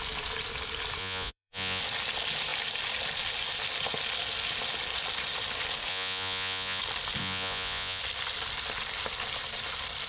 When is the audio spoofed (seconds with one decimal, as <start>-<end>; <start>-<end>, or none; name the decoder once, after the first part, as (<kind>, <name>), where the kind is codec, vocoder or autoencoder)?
1.0-1.8 (vocoder, Vocos); 5.9-6.8; 7.2-8.0